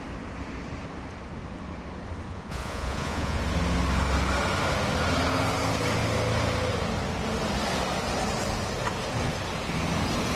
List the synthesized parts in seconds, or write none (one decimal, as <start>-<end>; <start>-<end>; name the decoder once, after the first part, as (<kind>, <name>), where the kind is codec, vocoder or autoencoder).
2.3-3.4 (vocoder, Vocos)